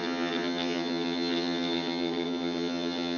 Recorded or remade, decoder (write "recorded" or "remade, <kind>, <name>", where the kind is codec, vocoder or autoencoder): remade, vocoder, HiFi-GAN